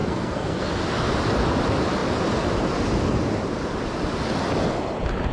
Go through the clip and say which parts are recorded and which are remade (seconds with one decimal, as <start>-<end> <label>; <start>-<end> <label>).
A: 0.0-0.7 remade; 0.7-5.3 recorded